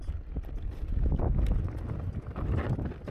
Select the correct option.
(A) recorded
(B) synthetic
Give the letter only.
A